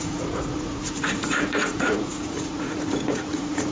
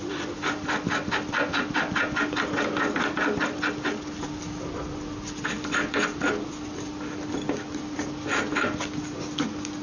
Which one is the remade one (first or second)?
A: first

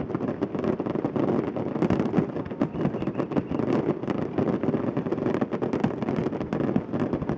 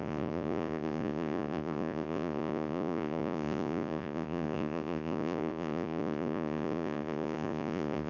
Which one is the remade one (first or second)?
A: second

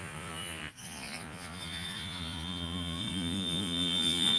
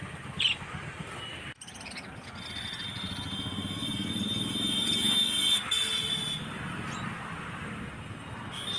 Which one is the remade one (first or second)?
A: first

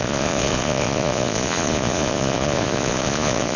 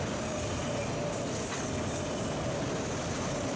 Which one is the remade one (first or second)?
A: first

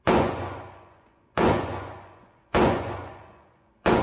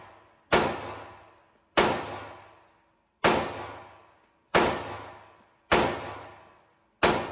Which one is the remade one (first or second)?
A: first